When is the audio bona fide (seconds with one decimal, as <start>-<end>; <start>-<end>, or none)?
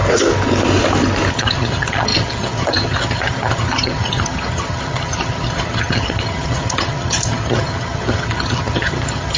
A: 0.0-1.3